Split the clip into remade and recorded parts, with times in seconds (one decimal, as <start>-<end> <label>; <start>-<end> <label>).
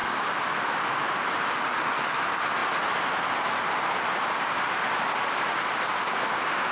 0.0-6.7 recorded